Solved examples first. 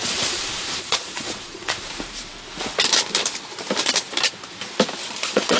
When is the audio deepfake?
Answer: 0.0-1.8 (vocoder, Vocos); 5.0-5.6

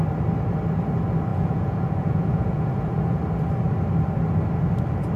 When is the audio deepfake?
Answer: 1.3-3.2 (vocoder, Vocos)

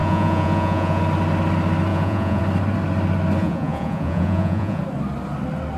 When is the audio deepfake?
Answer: 0.0-1.0 (vocoder, Vocos); 1.9-2.4; 3.4-4.8

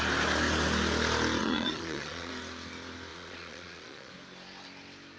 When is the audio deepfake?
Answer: 1.4-2.3 (vocoder, Vocos); 3.1-4.1

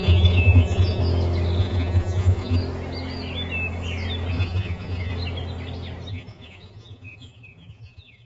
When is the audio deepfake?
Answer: 0.0-1.0 (vocoder, Vocos); 1.6-2.6; 4.3-5.1; 6.1-8.3

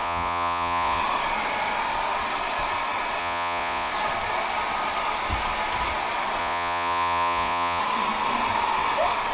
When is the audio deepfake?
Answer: 0.0-1.0 (vocoder, Vocos); 3.2-3.9; 6.4-7.8